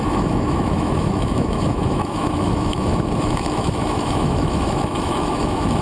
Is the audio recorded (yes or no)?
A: no